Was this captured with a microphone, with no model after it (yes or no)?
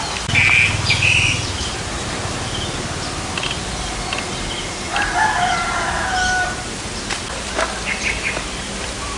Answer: yes